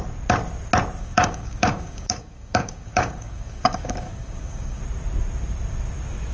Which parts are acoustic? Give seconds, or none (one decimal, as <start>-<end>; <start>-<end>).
0.0-1.0; 4.8-6.3